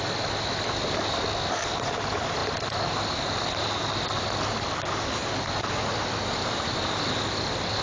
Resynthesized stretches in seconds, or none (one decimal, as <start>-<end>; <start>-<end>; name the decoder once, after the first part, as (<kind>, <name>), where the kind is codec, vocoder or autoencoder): 6.4-7.0 (vocoder, BigVGAN v2)

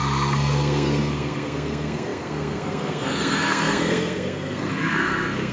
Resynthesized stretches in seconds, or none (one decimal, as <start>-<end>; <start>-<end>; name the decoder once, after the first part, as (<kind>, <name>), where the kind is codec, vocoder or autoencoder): 0.0-5.5 (codec, SNAC)

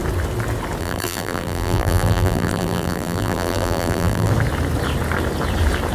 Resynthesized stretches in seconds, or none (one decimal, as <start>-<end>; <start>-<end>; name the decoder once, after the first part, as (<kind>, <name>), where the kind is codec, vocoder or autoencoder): 0.8-4.3 (vocoder, BigVGAN v2)

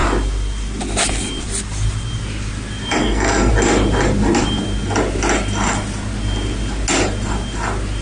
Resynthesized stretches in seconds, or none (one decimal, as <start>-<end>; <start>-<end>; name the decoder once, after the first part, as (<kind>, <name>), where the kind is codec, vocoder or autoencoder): 3.0-3.5 (codec, SNAC)

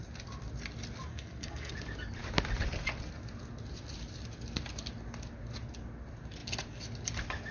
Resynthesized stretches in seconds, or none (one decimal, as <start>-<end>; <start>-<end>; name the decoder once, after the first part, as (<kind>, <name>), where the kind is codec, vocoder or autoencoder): 1.1-1.7 (codec, SNAC)

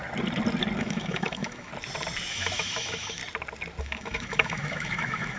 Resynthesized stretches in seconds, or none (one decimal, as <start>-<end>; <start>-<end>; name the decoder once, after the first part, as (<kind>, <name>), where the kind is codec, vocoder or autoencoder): 0.8-1.7 (autoencoder, DAC-VAE); 2.3-3.2; 3.8-5.4